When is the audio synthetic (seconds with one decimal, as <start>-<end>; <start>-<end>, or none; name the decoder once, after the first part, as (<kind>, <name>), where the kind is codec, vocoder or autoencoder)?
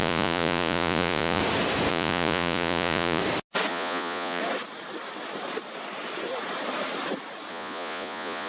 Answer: 0.0-1.4 (vocoder, Vocos); 1.9-3.2; 3.7-4.4; 7.5-8.5